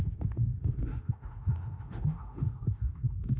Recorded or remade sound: remade